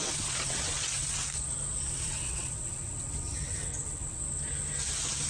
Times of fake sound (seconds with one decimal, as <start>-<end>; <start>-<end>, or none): 0.0-1.2; 1.9-4.2